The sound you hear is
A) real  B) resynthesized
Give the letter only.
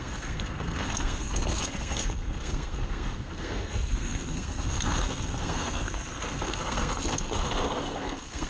B